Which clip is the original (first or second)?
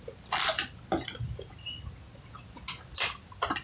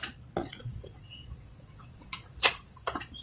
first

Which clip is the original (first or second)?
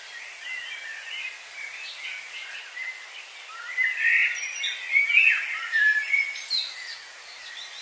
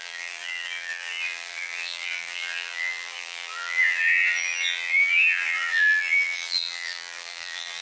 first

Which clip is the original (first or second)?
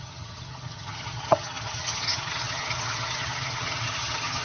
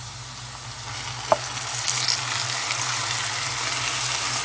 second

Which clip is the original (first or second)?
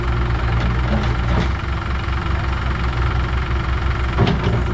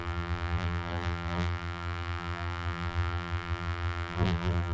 first